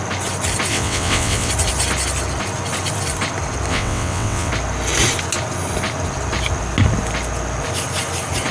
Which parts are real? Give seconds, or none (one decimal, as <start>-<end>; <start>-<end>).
0.0-0.7; 1.5-3.7; 4.5-8.5